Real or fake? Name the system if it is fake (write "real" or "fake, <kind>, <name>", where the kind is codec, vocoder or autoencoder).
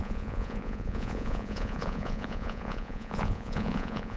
fake, vocoder, Vocos